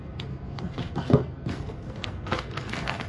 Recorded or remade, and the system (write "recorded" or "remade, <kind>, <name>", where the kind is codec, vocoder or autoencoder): remade, codec, SNAC